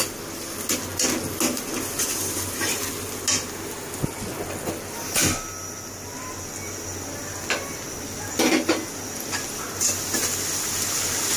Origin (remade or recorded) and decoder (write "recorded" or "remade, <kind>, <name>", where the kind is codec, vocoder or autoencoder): recorded